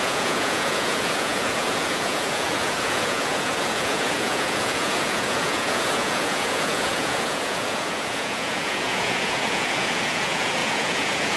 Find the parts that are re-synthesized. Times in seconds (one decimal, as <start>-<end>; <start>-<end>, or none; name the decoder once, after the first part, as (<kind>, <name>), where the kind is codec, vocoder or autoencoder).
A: 0.0-11.4 (vocoder, Vocos)